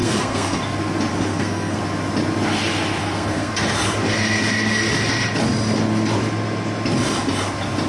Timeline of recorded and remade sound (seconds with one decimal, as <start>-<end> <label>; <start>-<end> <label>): 0.0-0.6 remade; 0.6-1.1 recorded; 1.1-1.8 remade; 1.8-3.0 recorded; 3.0-3.5 remade; 3.5-7.9 recorded